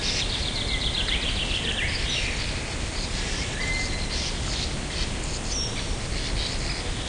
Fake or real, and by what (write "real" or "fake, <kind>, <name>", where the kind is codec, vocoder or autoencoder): real